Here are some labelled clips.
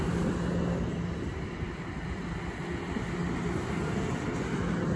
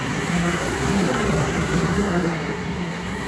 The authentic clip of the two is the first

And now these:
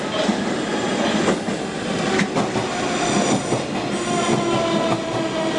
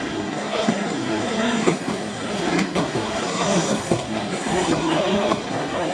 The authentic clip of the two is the first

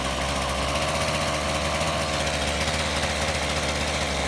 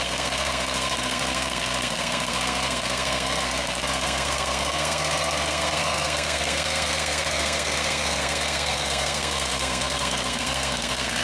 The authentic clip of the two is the first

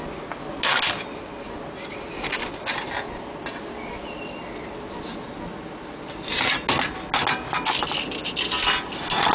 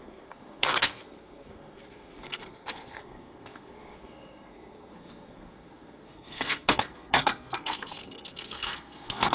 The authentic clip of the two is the first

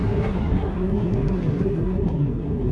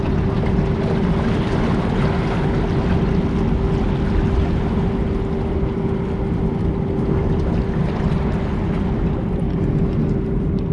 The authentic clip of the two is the second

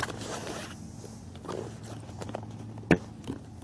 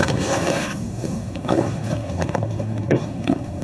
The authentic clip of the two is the first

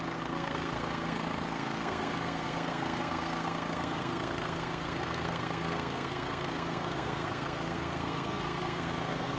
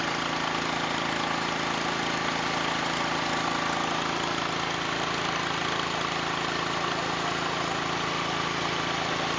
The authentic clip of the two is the second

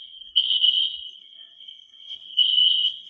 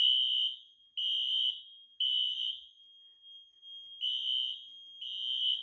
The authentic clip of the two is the second